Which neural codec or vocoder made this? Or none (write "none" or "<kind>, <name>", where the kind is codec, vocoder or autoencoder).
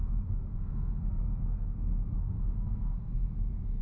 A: codec, SNAC